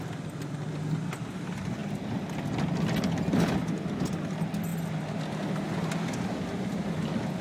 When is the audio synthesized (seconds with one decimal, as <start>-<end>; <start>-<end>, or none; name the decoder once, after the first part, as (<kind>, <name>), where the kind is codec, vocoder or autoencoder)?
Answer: none